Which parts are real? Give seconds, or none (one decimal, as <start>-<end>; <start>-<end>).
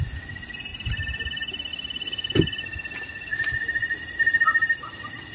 0.0-0.7; 1.7-5.3